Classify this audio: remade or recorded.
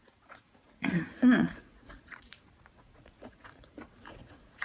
remade